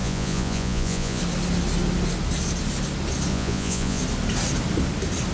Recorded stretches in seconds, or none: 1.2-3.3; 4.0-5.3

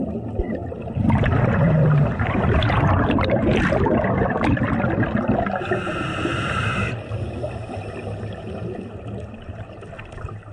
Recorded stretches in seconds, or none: 0.0-0.6; 3.9-10.5

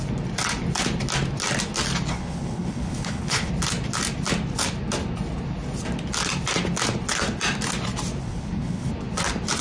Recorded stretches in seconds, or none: 0.0-2.1; 3.5-8.2; 8.9-9.6